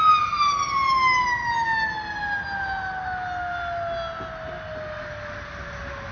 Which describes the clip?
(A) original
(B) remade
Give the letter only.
A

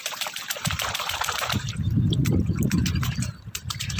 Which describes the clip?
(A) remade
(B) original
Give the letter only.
A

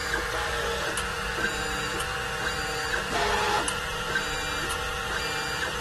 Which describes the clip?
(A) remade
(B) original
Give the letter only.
B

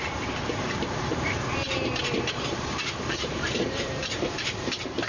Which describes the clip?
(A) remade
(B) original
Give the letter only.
A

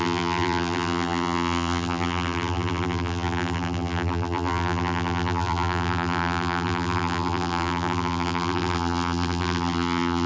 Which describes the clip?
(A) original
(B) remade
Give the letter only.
B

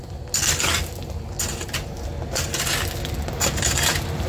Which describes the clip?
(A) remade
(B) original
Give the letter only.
B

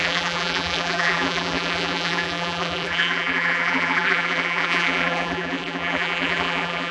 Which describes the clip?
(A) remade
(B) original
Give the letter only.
A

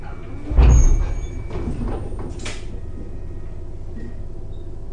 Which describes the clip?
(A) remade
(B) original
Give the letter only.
B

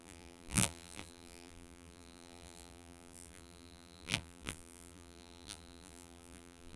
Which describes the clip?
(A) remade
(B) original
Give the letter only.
A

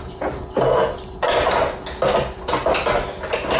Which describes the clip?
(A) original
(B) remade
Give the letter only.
A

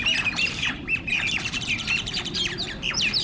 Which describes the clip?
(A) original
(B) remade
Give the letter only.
B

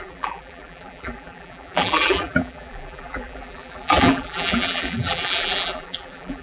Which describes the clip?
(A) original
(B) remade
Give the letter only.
B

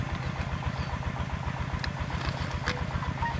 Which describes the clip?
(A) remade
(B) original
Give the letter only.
B